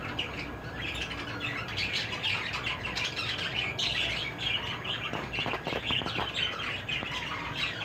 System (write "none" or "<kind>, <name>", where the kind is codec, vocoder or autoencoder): none